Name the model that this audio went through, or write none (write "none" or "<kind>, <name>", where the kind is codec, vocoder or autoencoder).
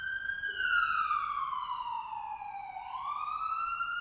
none